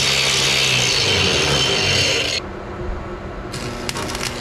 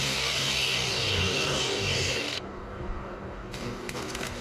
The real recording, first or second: first